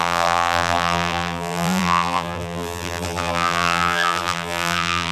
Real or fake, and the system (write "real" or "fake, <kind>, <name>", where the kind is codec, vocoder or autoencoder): fake, vocoder, BigVGAN v2